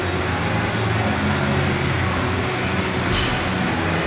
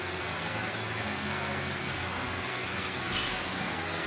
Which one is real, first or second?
first